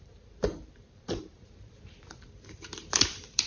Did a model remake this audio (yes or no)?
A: yes